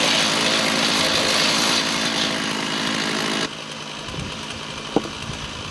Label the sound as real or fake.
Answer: real